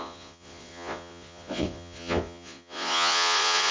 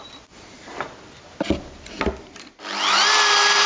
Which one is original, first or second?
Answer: second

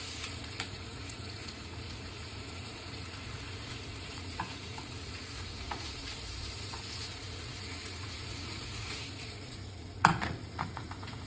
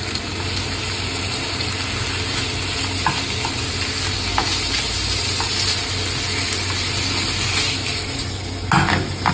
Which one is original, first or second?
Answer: second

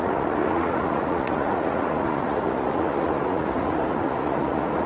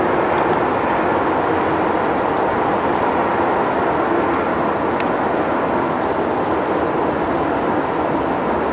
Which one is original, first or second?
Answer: second